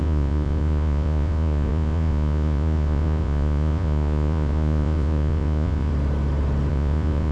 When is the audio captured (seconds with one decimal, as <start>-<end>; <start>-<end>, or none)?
5.9-6.7